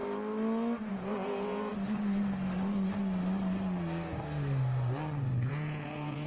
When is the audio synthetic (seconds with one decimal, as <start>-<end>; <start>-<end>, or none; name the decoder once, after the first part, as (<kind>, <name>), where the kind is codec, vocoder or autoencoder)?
0.9-1.7 (vocoder, Vocos); 5.5-6.3